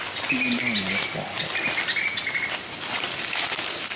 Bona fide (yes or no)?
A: yes